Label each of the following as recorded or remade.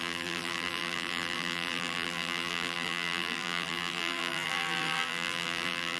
remade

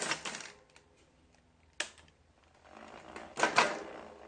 recorded